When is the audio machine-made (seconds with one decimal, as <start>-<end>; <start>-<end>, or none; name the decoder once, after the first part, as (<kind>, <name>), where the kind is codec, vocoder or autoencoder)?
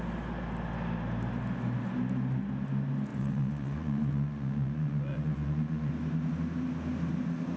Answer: 3.1-5.9 (vocoder, Vocos)